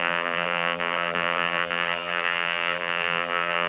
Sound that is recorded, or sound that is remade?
remade